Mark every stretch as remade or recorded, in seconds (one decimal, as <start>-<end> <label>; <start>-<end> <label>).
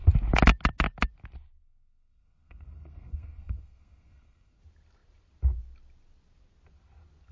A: 0.0-1.6 recorded; 1.6-4.6 remade; 4.6-7.3 recorded